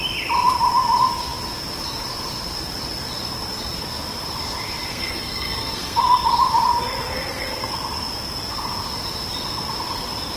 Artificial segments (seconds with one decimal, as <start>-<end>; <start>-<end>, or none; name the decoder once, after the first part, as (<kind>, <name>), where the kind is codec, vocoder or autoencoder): 4.9-6.0 (codec, SNAC); 7.0-7.7